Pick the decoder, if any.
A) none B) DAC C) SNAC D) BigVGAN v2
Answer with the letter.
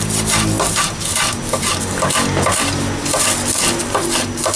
A